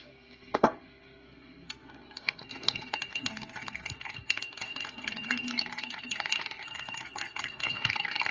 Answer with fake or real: fake